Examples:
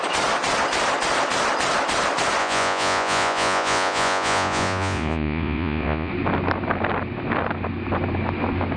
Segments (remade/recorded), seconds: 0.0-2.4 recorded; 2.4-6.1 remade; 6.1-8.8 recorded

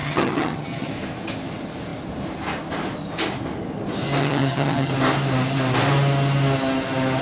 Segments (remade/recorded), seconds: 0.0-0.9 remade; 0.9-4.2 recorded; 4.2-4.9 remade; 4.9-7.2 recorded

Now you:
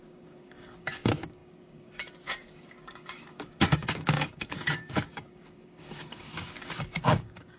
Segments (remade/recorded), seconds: 0.0-7.6 remade

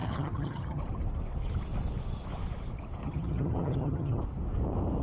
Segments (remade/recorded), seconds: 0.0-0.8 remade; 0.8-3.0 recorded; 3.0-4.2 remade; 4.2-5.0 recorded

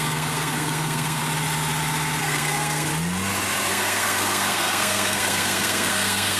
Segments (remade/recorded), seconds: 0.0-1.2 remade; 1.2-2.2 recorded; 2.2-2.9 remade; 2.9-3.7 recorded; 3.7-6.4 remade

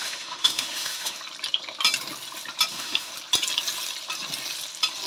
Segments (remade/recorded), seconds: 0.0-1.2 remade; 1.2-2.7 recorded; 2.7-3.1 remade; 3.1-5.1 recorded

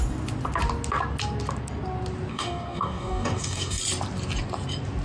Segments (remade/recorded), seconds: 0.0-2.3 recorded; 2.3-3.8 remade; 3.8-5.0 recorded